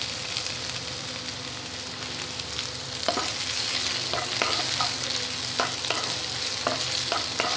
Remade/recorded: recorded